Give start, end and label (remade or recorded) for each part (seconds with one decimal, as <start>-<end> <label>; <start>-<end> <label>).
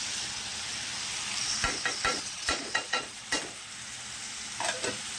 0.0-2.1 recorded; 2.1-3.2 remade; 3.2-5.2 recorded